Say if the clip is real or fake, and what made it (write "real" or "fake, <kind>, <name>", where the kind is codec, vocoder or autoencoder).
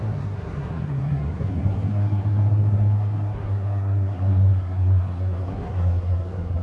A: fake, codec, SNAC